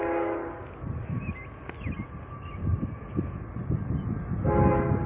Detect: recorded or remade recorded